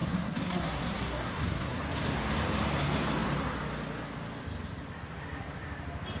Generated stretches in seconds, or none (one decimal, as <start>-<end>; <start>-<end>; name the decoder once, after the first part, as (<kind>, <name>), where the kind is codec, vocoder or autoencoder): 0.0-1.8 (codec, SNAC)